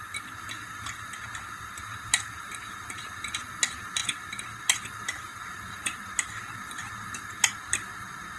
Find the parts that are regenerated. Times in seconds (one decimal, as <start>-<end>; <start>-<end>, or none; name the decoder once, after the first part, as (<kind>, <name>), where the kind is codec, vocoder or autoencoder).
none